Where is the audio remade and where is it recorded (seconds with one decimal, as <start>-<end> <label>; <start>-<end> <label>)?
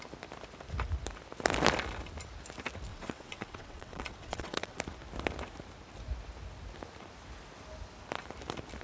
0.0-2.9 recorded; 2.9-4.8 remade; 4.8-8.8 recorded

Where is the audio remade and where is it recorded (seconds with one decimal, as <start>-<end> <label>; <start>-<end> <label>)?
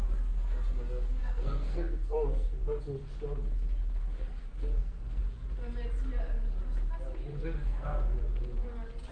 0.0-1.2 recorded; 1.2-2.8 remade; 2.8-4.0 recorded; 4.0-5.2 remade; 5.2-7.3 recorded; 7.3-8.2 remade; 8.2-9.1 recorded